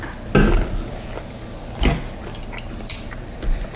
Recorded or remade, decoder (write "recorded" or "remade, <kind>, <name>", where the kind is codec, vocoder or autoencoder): recorded